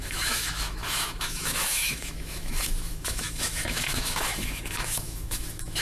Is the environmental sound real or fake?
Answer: fake